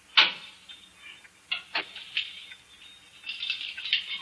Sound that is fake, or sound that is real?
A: real